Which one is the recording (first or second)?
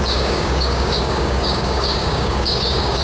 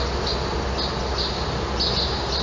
second